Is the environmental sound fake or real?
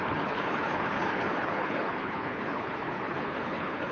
fake